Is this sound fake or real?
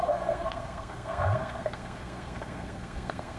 fake